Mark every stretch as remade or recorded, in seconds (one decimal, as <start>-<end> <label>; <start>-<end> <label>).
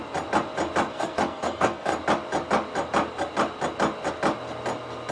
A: 0.0-0.9 recorded; 0.9-1.9 remade; 1.9-5.1 recorded